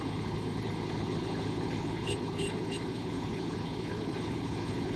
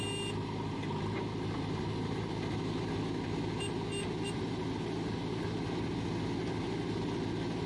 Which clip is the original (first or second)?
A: second